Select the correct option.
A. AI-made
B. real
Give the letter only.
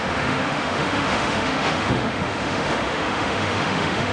A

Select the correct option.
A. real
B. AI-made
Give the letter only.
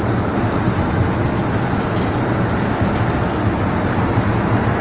A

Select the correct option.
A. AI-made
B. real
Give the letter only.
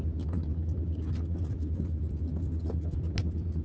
B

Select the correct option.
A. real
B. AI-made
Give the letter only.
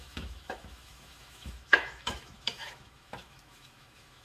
B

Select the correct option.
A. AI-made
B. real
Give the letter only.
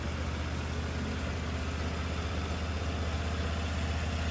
B